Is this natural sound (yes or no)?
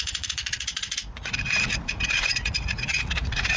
no